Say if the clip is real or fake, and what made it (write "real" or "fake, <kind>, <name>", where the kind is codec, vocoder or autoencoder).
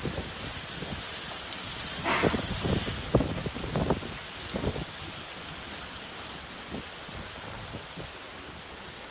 real